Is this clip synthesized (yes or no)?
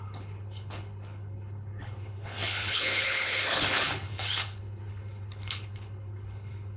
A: yes